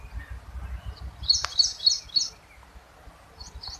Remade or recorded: recorded